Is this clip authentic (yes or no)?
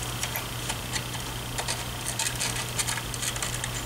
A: yes